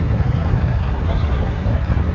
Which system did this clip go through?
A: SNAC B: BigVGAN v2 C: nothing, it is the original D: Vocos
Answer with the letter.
A